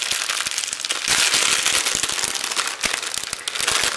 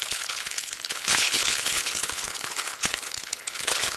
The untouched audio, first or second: first